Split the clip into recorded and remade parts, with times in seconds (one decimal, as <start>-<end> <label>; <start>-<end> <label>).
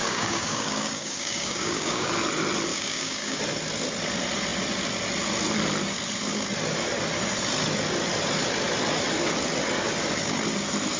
0.0-2.1 remade; 2.1-2.7 recorded; 2.7-3.4 remade; 3.4-11.0 recorded